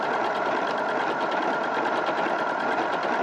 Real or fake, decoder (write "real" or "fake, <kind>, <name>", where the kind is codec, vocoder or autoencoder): fake, vocoder, BigVGAN v2